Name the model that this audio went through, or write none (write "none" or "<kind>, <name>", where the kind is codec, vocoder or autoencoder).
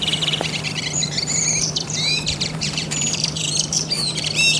vocoder, BigVGAN v2